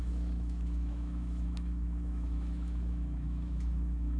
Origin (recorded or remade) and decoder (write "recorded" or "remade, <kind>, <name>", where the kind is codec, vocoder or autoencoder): remade, autoencoder, DAC-VAE